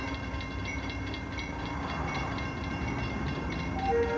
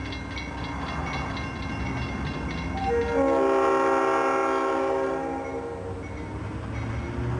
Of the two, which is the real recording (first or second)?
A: second